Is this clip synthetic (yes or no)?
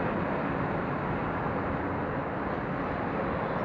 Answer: no